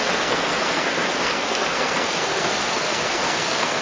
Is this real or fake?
fake